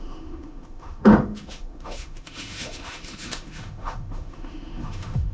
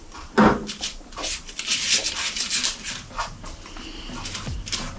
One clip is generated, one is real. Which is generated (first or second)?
first